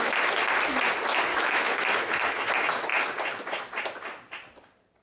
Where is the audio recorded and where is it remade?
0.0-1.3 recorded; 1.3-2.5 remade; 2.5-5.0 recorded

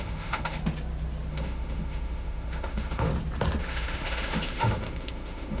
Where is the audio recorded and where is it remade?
0.0-0.6 remade; 0.6-1.3 recorded; 1.3-3.1 remade; 3.1-3.6 recorded; 3.6-5.6 remade

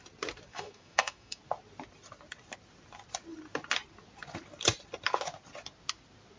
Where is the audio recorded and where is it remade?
0.0-0.5 recorded; 0.5-1.4 remade; 1.4-6.4 recorded